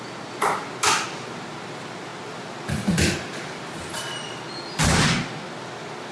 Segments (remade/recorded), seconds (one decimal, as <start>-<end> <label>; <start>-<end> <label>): 0.0-6.1 recorded